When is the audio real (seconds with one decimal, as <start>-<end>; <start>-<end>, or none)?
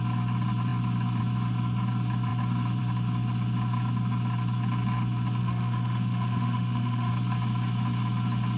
0.0-5.4; 7.1-8.6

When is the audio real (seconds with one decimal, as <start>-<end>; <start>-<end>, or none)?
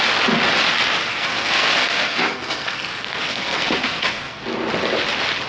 0.0-1.1; 4.4-5.5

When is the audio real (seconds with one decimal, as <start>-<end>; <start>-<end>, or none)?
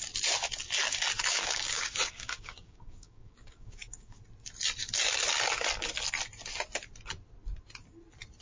0.0-1.3; 4.2-8.4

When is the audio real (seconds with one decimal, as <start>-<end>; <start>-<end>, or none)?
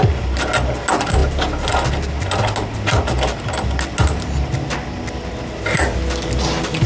0.0-6.9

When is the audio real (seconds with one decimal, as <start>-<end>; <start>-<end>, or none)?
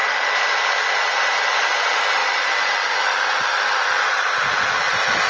0.0-5.3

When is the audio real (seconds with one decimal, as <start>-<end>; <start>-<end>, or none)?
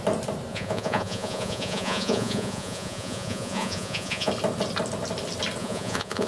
0.0-0.5; 4.3-5.6